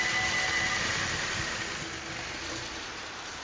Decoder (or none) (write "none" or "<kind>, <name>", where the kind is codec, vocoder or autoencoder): none